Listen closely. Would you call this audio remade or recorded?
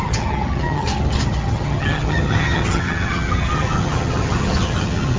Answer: remade